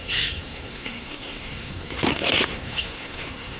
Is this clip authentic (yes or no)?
no